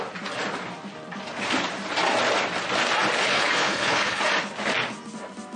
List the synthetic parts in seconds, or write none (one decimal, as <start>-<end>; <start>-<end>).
3.2-4.2